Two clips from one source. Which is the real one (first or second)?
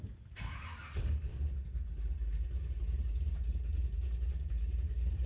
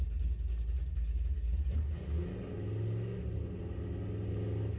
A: second